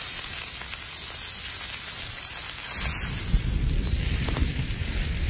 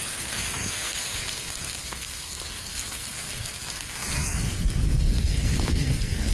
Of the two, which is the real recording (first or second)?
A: first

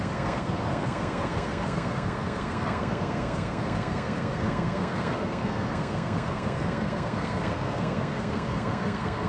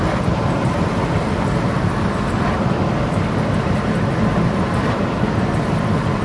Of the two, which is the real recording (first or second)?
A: second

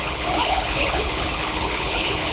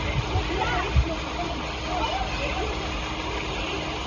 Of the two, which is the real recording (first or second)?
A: second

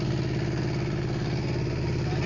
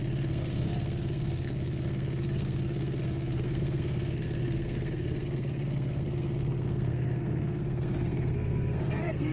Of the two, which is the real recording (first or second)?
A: first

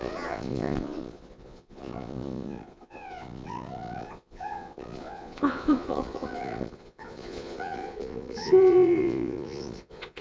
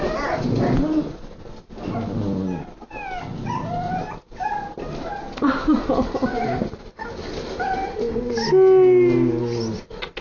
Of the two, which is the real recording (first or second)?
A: second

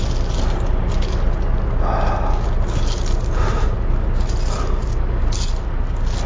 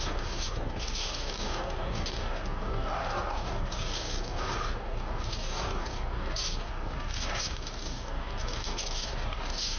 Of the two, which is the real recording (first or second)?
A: first